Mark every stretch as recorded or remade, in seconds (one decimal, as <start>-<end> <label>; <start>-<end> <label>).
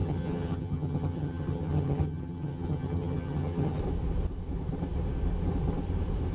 0.0-3.8 remade; 3.8-6.3 recorded